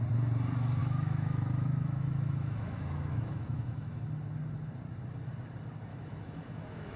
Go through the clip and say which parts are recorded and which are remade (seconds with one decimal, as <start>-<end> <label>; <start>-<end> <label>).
0.0-0.8 recorded; 0.8-4.0 remade; 4.0-5.9 recorded; 5.9-7.0 remade